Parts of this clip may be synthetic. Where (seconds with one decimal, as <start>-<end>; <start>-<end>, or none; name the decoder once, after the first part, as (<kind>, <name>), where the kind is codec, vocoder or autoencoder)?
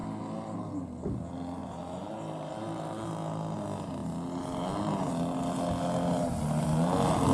0.0-0.7 (vocoder, BigVGAN v2); 1.6-3.1